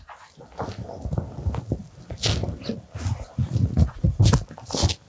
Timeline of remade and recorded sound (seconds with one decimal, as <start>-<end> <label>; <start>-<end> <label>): 0.0-3.4 recorded; 3.4-4.2 remade; 4.2-5.1 recorded